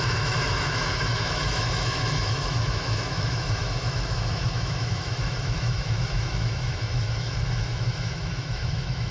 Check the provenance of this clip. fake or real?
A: fake